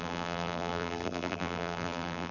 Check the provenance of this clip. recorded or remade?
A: remade